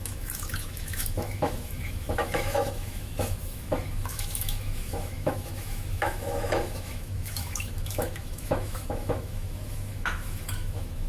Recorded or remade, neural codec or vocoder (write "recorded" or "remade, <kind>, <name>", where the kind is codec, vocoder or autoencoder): remade, autoencoder, DAC-VAE